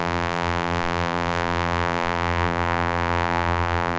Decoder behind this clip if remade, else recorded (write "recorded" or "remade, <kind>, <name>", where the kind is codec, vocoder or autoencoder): remade, vocoder, BigVGAN v2